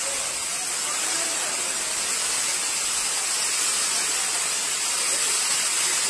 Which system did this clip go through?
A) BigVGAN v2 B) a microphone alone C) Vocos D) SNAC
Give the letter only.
B